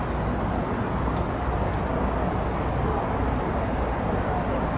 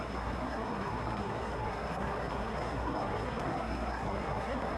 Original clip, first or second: first